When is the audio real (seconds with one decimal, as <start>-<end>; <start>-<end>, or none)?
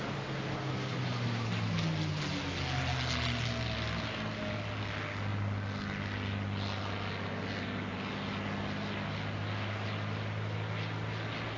0.0-11.6